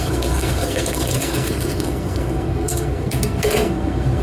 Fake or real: fake